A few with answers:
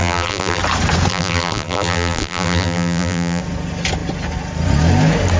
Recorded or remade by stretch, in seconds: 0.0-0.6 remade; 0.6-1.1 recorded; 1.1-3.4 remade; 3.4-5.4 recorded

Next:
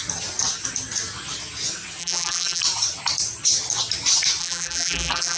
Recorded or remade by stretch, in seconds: 0.0-2.0 recorded; 2.0-2.6 remade; 2.6-4.4 recorded; 4.4-5.4 remade